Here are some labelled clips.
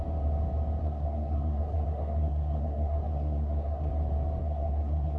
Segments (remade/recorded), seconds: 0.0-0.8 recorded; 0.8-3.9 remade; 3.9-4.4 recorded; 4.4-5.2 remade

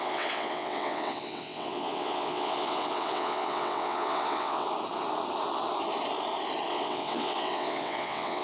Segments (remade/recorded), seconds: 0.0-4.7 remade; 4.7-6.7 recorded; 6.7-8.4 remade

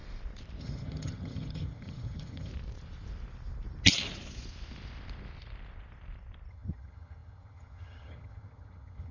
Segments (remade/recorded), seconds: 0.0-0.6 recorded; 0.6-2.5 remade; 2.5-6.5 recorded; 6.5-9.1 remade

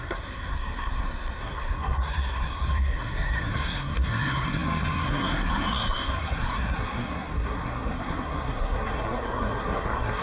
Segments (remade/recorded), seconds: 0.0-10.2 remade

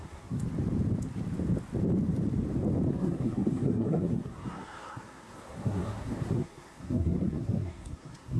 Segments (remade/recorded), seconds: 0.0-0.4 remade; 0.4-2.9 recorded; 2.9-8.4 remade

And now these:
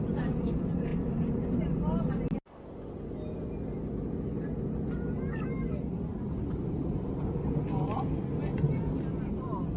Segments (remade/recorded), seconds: 0.0-6.1 recorded; 6.1-7.3 remade; 7.3-9.8 recorded

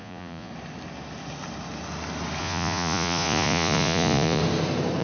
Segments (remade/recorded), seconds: 0.0-0.5 remade; 0.5-2.4 recorded; 2.4-4.4 remade; 4.4-5.0 recorded

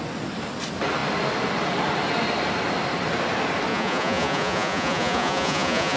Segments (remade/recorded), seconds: 0.0-3.7 recorded; 3.7-6.0 remade